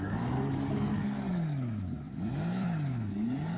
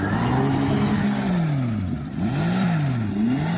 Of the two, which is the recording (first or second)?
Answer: second